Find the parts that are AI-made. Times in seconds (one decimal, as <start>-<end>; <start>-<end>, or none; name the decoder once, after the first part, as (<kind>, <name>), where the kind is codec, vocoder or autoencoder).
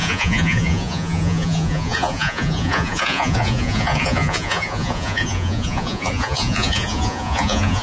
0.0-7.8 (vocoder, Vocos)